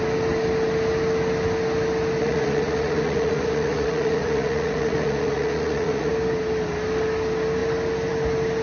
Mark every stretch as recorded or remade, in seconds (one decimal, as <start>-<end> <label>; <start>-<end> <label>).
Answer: 0.0-2.2 recorded; 2.2-6.1 remade; 6.1-8.6 recorded